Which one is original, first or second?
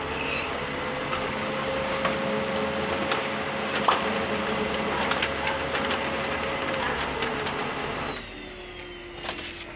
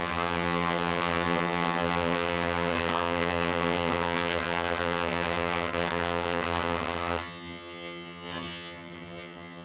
first